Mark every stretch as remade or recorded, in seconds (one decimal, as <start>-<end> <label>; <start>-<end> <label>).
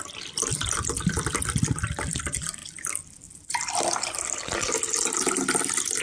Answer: 0.0-6.0 recorded